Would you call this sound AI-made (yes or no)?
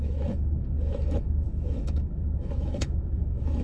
yes